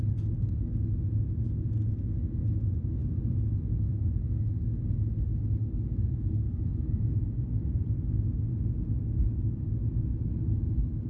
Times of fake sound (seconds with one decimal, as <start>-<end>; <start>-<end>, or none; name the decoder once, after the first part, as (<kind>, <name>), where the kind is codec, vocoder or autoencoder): none